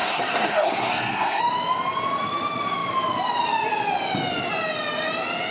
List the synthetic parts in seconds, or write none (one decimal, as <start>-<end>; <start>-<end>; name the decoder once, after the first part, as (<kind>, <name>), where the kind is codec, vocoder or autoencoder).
0.0-1.4 (codec, SNAC)